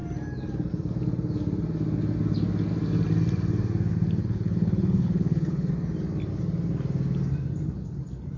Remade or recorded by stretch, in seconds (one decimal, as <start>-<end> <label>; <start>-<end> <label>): 0.0-4.2 recorded; 4.2-5.7 remade; 5.7-8.4 recorded